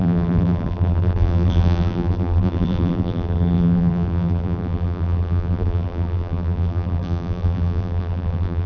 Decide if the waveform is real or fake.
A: fake